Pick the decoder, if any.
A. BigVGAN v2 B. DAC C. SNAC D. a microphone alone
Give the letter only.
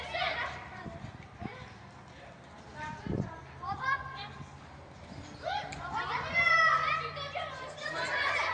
A